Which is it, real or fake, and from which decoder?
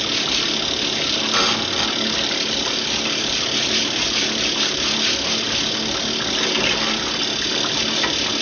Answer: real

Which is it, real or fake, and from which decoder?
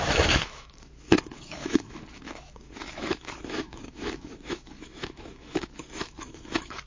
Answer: fake, autoencoder, DAC-VAE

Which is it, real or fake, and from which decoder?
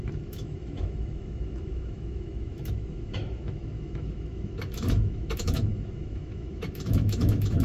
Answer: fake, autoencoder, DAC-VAE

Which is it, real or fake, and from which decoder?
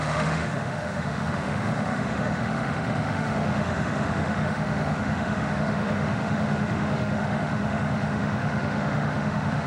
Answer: fake, autoencoder, DAC-VAE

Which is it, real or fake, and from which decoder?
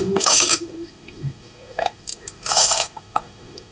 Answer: fake, autoencoder, DAC-VAE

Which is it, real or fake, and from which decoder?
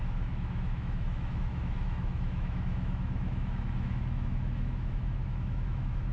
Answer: fake, autoencoder, DAC-VAE